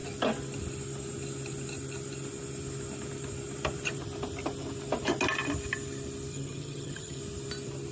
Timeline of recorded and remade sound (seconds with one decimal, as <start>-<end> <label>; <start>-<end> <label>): 0.0-6.3 recorded; 6.3-7.2 remade; 7.2-7.9 recorded